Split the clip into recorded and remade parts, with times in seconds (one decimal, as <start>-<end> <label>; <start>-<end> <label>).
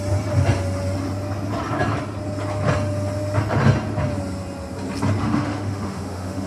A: 0.0-5.2 recorded; 5.2-6.5 remade